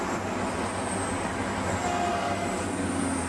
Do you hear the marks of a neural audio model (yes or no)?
no